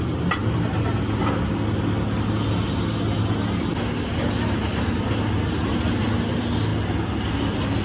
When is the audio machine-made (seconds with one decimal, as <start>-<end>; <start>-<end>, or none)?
none